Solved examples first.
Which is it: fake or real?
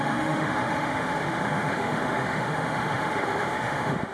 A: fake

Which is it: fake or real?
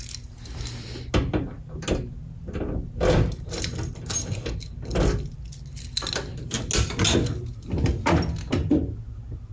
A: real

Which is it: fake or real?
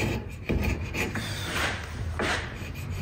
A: fake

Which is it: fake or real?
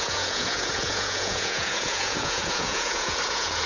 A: fake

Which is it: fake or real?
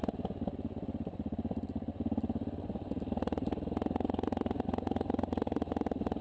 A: real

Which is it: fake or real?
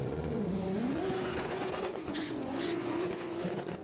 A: fake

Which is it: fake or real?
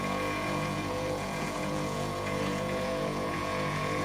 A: fake